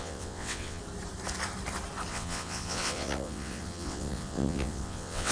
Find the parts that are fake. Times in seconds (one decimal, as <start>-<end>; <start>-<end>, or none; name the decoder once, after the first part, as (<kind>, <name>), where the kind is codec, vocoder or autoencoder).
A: 0.0-0.8 (vocoder, WaveNeXt); 2.1-5.3